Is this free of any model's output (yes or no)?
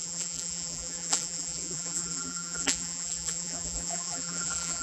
no